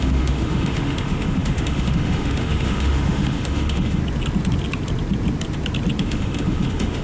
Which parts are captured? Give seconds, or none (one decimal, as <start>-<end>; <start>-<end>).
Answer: 4.0-6.0